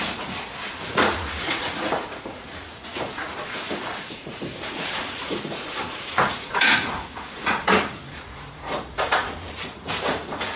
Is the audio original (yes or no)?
no